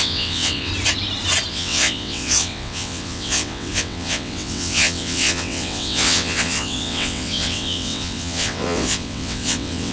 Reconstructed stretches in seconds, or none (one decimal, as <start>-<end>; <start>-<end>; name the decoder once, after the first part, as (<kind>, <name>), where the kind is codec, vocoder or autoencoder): 0.0-0.7 (vocoder, WaveNeXt); 1.5-9.9